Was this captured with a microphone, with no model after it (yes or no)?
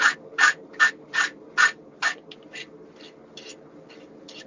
yes